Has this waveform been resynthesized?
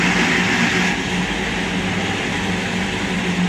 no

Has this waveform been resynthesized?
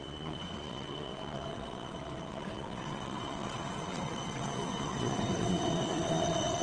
yes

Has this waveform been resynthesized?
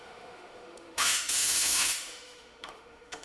yes